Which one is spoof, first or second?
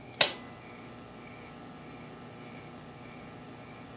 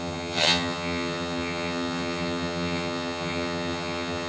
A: second